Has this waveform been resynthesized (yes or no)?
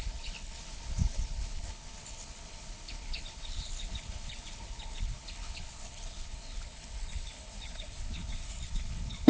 yes